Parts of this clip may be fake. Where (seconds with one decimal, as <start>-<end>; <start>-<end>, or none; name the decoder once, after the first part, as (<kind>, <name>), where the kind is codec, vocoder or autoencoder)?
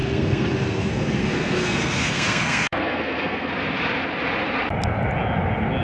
0.0-3.5 (codec, SNAC)